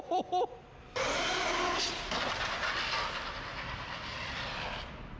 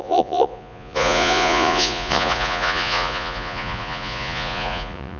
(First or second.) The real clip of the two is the first